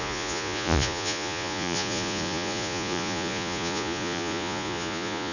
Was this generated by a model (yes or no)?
yes